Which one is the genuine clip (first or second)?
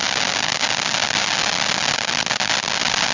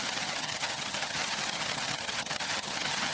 first